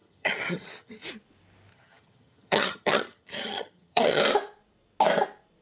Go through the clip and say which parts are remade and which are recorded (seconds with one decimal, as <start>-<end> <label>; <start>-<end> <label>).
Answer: 0.0-1.1 remade; 1.1-1.7 recorded; 1.7-4.2 remade; 4.2-5.6 recorded